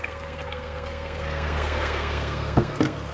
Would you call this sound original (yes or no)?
no